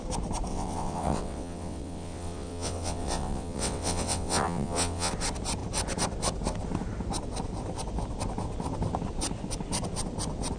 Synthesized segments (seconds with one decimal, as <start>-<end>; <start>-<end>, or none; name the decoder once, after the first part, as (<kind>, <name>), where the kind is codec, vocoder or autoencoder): 0.5-5.1 (vocoder, WaveNeXt)

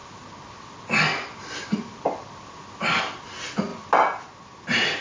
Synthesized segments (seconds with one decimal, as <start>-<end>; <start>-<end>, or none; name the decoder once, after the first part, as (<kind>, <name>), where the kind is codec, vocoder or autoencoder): none